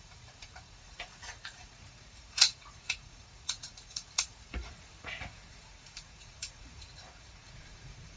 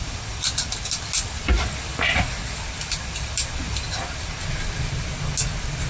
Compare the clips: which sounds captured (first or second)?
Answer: second